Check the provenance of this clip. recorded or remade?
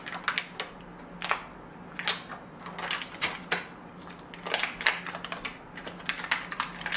recorded